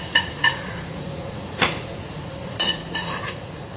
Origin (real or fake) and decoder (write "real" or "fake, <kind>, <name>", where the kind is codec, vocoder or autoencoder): fake, vocoder, Vocos